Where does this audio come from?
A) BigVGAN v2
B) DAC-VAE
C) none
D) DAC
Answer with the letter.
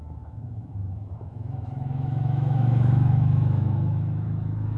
B